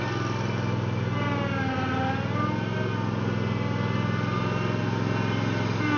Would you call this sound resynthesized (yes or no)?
no